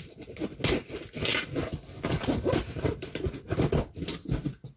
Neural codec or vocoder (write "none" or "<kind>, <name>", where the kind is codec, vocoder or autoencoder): none